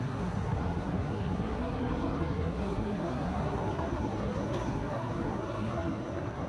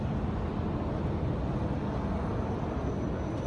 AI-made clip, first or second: first